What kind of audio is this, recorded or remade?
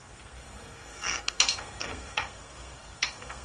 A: remade